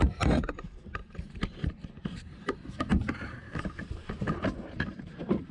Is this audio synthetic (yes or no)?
yes